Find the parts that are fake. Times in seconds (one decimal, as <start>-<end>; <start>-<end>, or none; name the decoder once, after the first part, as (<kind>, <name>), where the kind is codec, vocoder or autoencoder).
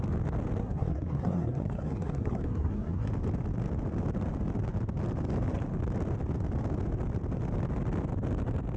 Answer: 0.6-3.1 (codec, SNAC)